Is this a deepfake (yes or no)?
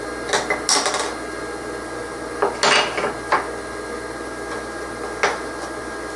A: no